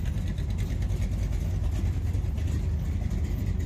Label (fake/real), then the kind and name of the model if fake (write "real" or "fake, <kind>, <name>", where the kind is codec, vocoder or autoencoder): real